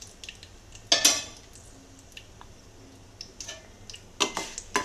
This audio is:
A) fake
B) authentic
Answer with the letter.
B